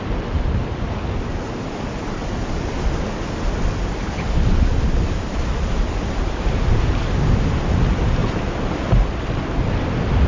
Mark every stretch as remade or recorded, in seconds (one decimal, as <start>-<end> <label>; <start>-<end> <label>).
0.0-2.2 recorded; 2.2-7.0 remade; 7.0-8.2 recorded; 8.2-9.4 remade; 9.4-10.3 recorded